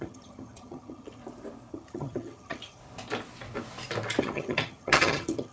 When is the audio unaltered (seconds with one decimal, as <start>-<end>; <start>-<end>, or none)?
1.2-1.7; 2.8-4.2